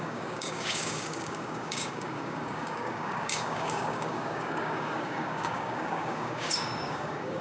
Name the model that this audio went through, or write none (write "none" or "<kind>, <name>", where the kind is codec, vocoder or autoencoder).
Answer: codec, DAC